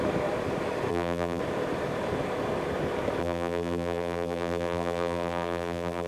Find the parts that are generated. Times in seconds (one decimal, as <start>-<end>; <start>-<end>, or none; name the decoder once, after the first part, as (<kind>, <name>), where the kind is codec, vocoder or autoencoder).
0.9-1.4 (vocoder, BigVGAN v2); 3.2-6.1